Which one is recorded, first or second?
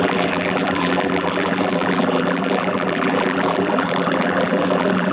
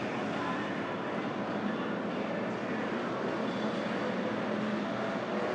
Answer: second